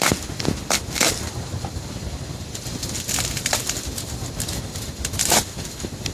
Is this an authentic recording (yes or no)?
yes